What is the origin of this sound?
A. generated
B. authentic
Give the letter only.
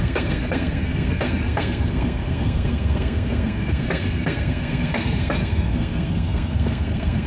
A